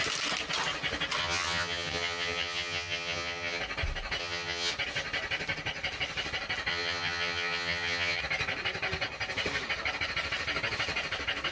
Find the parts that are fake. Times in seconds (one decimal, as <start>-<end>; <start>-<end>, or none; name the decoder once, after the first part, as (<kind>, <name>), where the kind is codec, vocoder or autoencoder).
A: 1.2-3.6 (vocoder, HiFi-GAN); 4.2-4.7; 6.7-8.2